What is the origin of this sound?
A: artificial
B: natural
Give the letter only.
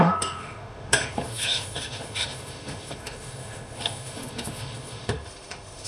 A